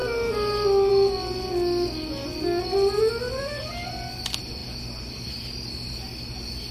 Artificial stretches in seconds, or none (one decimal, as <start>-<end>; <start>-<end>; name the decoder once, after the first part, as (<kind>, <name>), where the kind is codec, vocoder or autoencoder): none